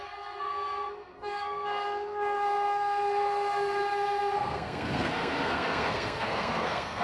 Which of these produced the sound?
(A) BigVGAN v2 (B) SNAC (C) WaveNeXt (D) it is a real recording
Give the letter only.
B